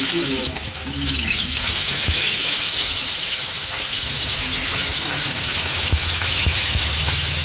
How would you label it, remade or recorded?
remade